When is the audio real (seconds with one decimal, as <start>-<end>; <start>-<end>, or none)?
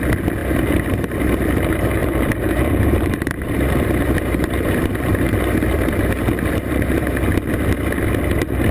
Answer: 0.0-0.4; 1.1-2.0; 7.2-8.7